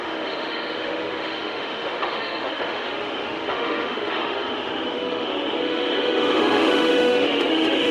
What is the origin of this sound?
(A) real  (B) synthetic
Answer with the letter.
B